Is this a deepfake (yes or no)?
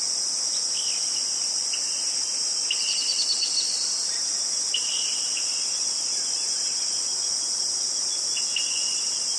no